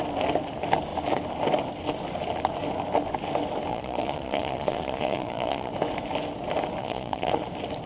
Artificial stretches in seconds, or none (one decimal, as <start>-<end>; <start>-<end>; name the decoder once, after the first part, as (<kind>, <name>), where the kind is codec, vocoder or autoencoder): 3.7-5.7 (vocoder, Vocos); 6.8-7.4